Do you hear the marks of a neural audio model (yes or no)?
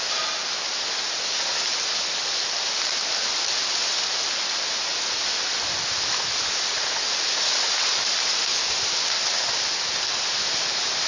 no